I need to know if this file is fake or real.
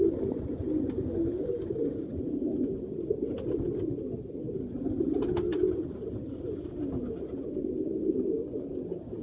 real